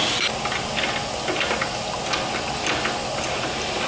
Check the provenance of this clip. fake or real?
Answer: real